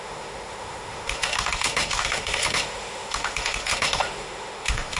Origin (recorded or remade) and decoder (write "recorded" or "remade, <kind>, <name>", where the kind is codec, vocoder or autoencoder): remade, autoencoder, DAC-VAE